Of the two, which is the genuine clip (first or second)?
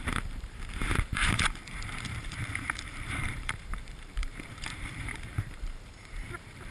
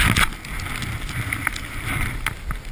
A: second